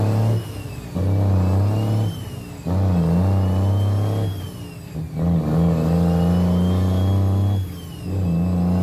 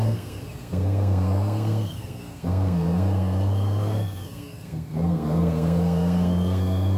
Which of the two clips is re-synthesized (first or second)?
second